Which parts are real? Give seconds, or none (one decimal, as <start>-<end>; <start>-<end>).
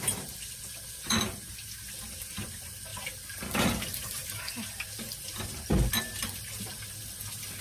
0.0-7.6